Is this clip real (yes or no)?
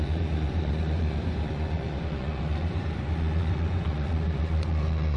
no